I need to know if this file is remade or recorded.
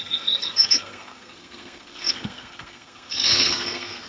remade